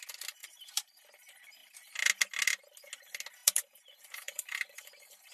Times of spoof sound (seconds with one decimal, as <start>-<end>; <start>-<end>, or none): 0.4-1.0; 3.4-5.3